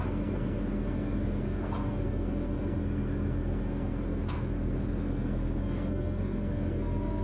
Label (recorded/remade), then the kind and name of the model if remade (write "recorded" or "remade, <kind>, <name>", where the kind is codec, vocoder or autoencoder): remade, codec, SNAC